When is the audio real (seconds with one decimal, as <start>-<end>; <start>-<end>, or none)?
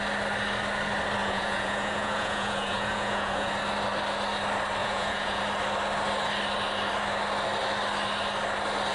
0.0-1.2; 3.5-4.8; 5.4-8.9